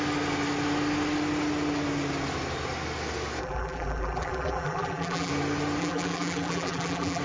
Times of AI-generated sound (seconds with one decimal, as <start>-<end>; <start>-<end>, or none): 3.4-5.3; 5.8-7.2